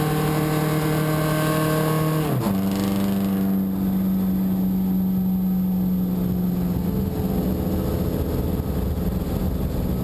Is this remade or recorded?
recorded